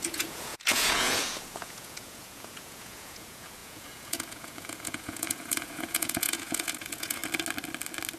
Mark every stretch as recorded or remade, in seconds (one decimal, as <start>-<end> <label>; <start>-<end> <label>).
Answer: 0.0-7.2 remade; 7.2-8.2 recorded